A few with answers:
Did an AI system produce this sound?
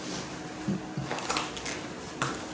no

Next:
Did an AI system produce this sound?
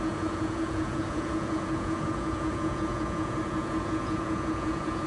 yes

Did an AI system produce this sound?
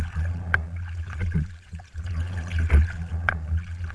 yes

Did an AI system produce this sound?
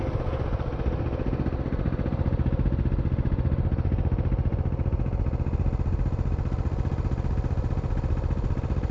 no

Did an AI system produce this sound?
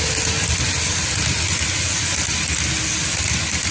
no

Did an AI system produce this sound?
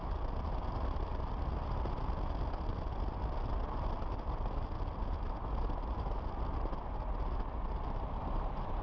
no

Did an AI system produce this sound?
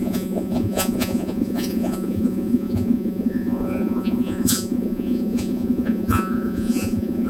yes